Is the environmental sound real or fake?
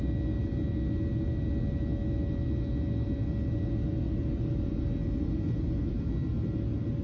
real